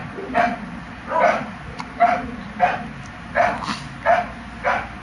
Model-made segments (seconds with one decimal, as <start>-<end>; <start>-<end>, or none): none